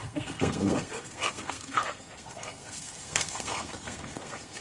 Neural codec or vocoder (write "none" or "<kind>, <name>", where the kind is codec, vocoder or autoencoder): codec, SNAC